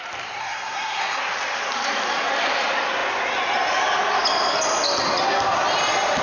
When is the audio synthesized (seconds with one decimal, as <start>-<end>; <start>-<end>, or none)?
0.4-1.2